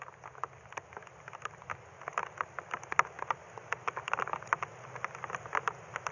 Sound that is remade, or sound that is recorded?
recorded